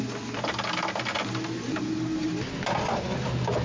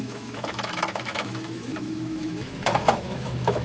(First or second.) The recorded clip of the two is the first